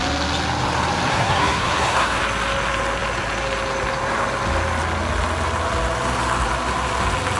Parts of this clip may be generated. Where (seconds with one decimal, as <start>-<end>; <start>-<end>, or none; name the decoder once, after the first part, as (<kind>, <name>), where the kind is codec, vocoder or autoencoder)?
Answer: 1.1-2.2 (codec, SNAC)